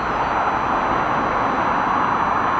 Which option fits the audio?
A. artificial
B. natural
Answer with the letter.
B